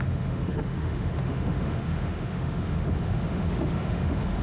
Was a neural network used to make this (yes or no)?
yes